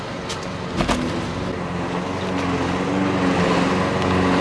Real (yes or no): yes